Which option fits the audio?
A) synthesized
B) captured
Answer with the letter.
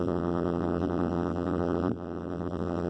A